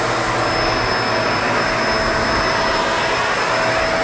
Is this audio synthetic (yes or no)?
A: no